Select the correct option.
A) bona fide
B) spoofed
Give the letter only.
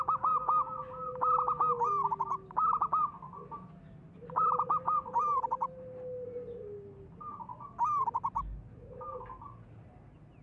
A